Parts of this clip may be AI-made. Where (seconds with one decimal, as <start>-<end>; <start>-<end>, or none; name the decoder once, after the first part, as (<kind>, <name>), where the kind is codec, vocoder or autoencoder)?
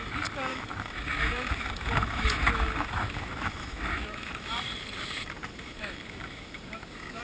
0.5-4.6 (autoencoder, DAC-VAE); 5.5-7.2